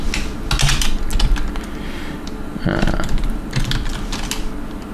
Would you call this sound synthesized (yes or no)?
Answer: no